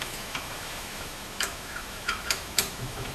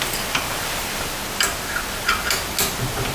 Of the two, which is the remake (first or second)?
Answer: first